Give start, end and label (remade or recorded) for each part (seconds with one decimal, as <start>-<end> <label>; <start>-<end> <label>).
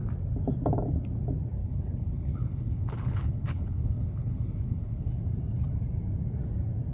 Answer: 0.0-1.6 recorded; 1.6-5.2 remade; 5.2-6.9 recorded